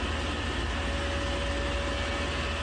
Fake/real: real